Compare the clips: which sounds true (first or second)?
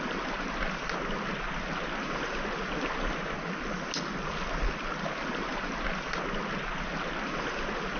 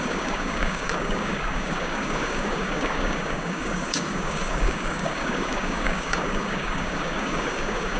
first